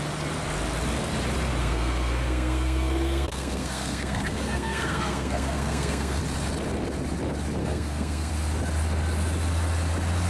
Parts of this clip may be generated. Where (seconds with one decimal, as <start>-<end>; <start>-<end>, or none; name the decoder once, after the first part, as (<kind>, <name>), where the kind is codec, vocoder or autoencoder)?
1.6-6.2 (codec, SNAC); 7.6-8.3